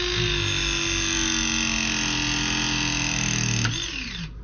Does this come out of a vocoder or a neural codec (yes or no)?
no